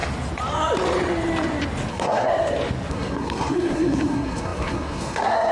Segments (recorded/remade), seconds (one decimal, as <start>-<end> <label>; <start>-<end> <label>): 0.0-1.9 recorded; 1.9-2.3 remade; 2.3-2.9 recorded; 2.9-5.5 remade